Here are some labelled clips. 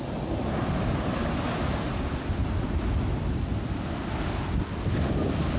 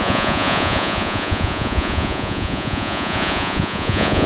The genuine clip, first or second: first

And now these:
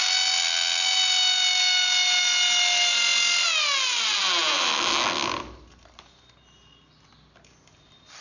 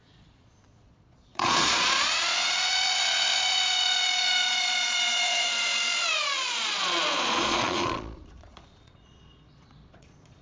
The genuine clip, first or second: first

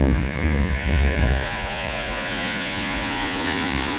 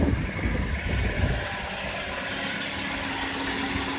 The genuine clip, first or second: second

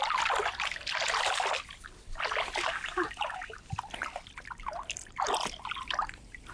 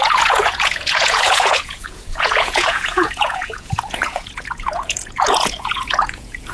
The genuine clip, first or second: first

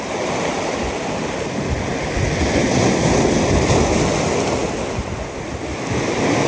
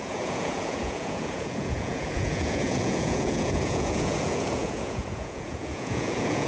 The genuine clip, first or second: first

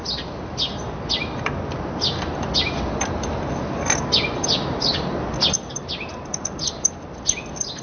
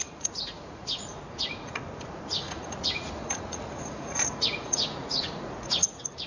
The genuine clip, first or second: first